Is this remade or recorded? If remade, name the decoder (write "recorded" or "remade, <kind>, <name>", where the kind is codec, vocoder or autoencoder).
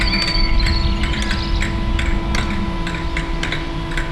recorded